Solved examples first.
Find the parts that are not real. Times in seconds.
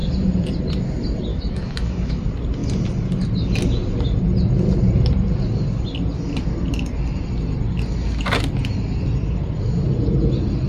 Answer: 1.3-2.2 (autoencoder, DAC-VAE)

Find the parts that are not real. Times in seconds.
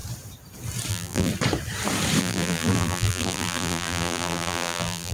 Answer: 0.9-1.3 (vocoder, BigVGAN v2); 2.2-5.1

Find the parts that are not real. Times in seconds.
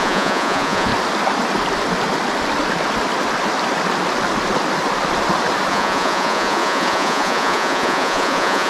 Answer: 0.0-0.9 (vocoder, Vocos); 5.7-8.7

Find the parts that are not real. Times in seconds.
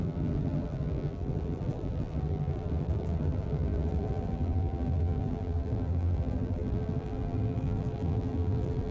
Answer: 0.0-8.9 (vocoder, BigVGAN v2)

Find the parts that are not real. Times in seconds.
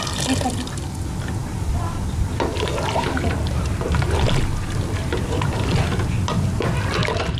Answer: 1.4-5.8 (vocoder, BigVGAN v2)